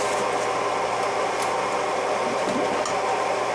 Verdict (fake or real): real